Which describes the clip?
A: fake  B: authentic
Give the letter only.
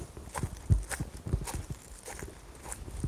B